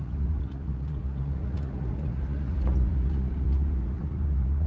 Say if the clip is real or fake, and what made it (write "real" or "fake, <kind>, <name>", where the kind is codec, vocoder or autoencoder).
fake, vocoder, Vocos